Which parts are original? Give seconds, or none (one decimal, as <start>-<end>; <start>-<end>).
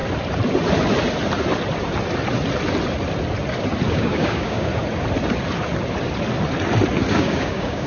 0.0-3.9; 4.7-7.1